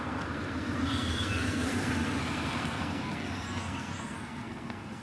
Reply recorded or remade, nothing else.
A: remade